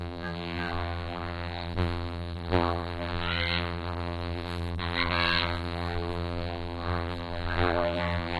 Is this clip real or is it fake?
fake